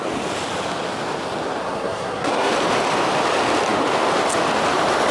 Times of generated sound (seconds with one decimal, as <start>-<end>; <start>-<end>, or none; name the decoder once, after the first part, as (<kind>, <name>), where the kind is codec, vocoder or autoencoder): 1.6-2.5 (codec, SNAC)